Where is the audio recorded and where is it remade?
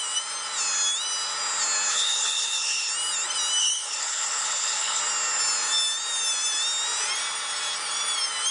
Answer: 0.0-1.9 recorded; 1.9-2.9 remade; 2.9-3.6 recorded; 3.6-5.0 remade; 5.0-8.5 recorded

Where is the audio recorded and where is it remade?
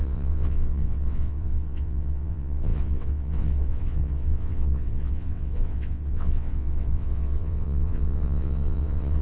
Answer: 0.0-9.2 remade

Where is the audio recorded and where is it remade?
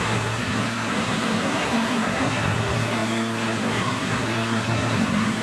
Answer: 0.0-5.4 remade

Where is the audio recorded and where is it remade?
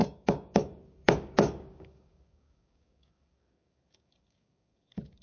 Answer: 0.0-5.2 remade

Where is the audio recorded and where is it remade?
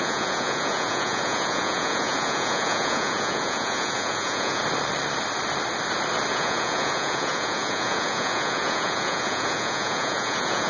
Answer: 0.0-4.6 remade; 4.6-6.3 recorded; 6.3-10.7 remade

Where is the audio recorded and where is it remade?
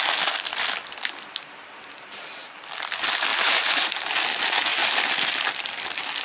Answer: 0.0-3.3 recorded; 3.3-3.9 remade; 3.9-6.2 recorded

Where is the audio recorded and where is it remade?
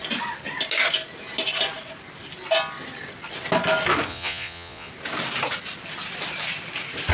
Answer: 0.0-4.1 recorded; 4.1-4.9 remade; 4.9-7.1 recorded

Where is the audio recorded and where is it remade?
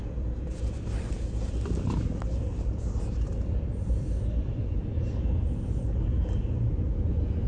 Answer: 0.0-3.1 recorded; 3.1-4.6 remade; 4.6-7.5 recorded